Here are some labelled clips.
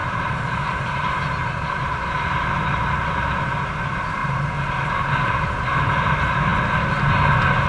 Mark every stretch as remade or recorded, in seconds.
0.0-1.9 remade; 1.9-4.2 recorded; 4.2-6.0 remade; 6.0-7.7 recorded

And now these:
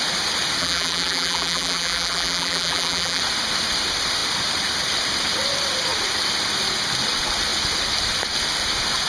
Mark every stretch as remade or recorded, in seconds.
0.0-0.6 recorded; 0.6-3.2 remade; 3.2-9.1 recorded